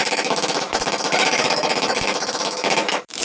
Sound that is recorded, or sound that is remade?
remade